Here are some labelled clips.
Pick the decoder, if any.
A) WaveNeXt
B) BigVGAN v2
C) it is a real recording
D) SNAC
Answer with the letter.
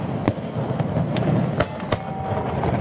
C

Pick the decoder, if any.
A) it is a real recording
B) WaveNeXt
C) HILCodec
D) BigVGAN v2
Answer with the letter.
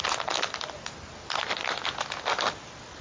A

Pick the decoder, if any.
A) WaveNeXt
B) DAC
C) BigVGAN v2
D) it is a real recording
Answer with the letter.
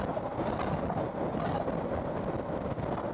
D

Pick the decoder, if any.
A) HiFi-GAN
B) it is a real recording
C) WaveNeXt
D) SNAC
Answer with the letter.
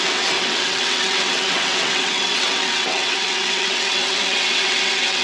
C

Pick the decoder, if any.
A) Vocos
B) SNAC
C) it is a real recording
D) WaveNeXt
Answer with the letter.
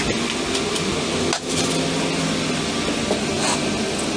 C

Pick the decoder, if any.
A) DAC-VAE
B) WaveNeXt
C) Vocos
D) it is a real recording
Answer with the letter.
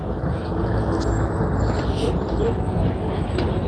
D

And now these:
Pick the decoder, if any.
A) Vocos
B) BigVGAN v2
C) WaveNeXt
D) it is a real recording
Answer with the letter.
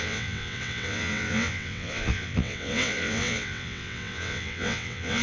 C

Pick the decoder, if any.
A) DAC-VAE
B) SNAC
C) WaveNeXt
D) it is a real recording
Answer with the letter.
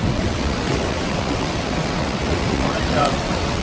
C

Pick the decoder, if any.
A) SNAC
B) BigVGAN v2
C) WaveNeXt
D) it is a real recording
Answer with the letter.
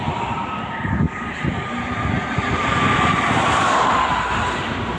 D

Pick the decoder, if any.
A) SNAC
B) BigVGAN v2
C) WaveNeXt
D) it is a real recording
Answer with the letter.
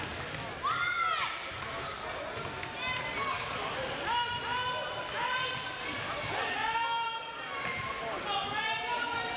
D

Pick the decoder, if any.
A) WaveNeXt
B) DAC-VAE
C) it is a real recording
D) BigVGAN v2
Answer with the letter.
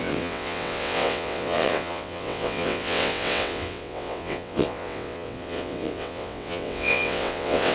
A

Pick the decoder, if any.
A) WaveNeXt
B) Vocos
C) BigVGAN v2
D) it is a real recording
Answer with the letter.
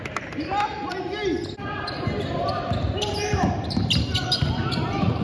D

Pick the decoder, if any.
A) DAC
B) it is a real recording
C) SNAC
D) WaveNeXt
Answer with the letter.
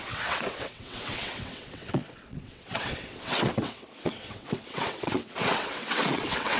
D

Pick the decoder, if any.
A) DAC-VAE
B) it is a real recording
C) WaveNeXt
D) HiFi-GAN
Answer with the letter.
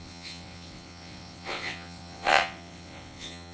C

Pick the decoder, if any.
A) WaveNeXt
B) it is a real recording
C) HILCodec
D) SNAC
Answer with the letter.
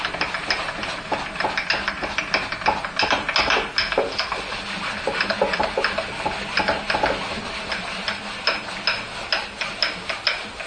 B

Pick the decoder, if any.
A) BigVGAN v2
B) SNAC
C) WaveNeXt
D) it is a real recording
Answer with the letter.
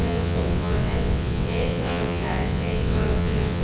C